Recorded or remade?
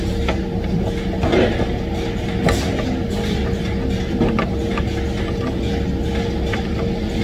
recorded